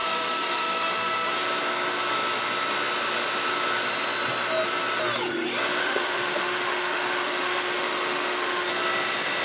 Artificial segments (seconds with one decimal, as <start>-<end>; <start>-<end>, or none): 0.0-1.3; 5.8-8.7